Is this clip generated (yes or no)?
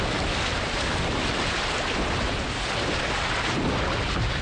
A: no